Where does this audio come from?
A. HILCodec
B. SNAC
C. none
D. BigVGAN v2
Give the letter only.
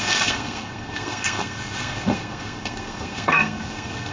B